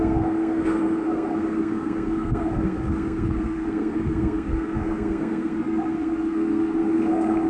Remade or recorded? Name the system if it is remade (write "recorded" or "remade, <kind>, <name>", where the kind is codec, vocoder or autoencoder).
remade, codec, SNAC